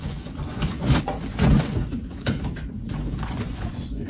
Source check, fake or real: fake